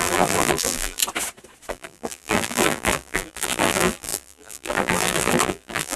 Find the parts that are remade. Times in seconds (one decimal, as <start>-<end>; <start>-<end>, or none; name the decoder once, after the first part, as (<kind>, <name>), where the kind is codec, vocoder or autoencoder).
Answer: 0.0-1.0 (vocoder, BigVGAN v2); 1.7-6.0